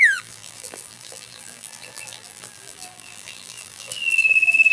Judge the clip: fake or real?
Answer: fake